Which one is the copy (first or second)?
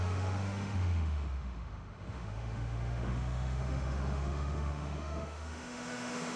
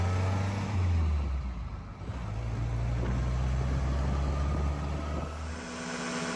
first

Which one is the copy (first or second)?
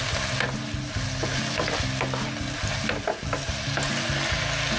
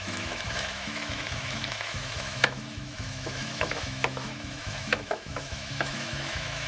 second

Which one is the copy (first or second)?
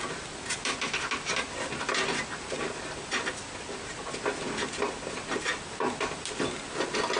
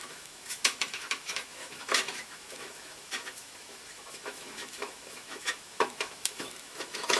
second